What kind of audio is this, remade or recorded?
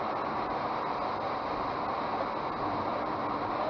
recorded